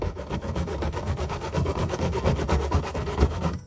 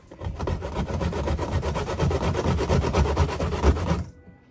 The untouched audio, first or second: second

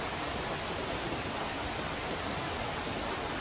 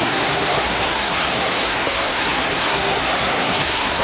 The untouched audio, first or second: first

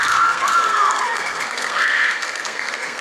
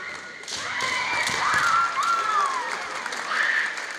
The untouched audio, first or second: second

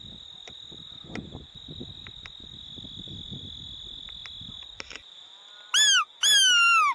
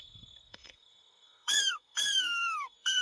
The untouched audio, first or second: first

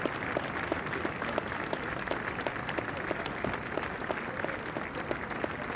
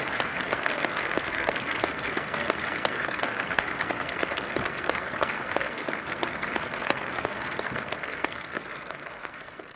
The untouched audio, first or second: first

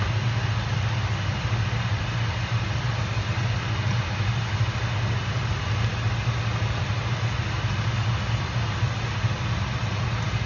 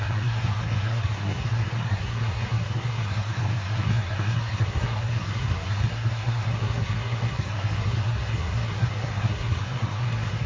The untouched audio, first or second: first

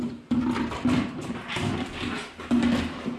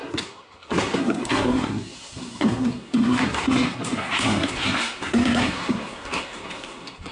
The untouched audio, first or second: first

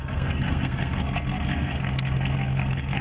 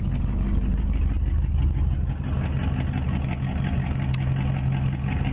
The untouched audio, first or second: second